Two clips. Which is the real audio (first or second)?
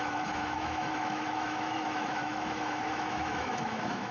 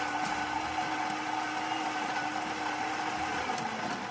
second